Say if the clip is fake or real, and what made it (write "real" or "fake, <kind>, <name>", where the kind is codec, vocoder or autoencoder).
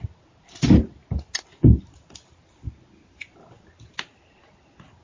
real